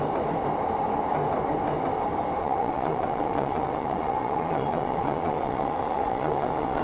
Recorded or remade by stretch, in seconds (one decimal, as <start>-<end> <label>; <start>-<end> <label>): 0.0-2.4 recorded; 2.4-6.8 remade